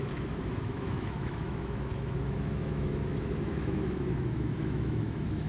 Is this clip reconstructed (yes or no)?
yes